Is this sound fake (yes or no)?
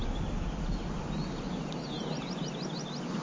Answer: no